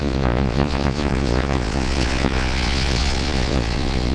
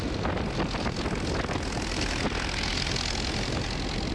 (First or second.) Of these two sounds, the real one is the second